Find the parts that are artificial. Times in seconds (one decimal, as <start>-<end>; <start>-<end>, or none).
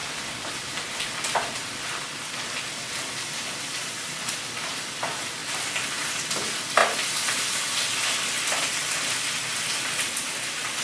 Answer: 0.0-0.7; 5.4-6.1